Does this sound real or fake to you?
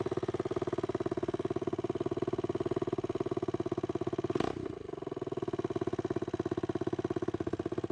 real